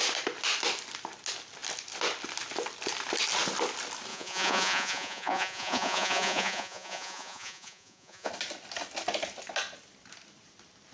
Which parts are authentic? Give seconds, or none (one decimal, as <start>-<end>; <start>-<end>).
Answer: 0.0-4.1; 8.3-10.9